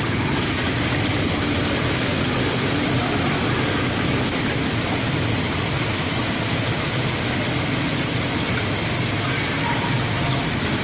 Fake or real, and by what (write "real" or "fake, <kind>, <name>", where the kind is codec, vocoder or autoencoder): real